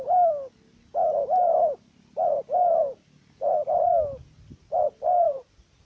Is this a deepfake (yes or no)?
no